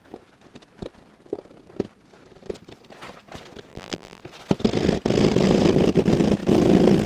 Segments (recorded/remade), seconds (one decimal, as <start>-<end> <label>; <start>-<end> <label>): 0.0-3.7 recorded; 3.7-4.2 remade; 4.2-7.1 recorded